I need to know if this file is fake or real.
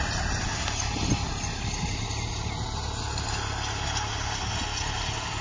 real